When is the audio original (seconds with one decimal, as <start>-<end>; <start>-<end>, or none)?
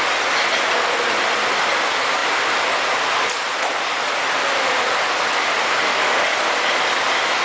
0.0-5.9; 6.5-7.4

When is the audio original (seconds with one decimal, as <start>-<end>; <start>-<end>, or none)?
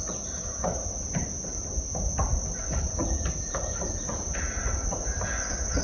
0.0-5.8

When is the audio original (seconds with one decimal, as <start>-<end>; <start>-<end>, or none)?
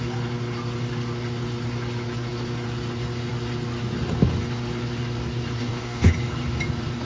0.0-5.6; 6.1-7.0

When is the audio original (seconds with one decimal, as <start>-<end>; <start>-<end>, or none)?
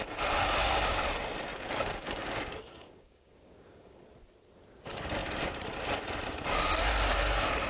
0.0-1.5; 4.0-7.7